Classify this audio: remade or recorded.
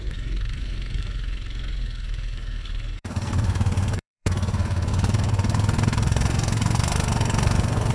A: remade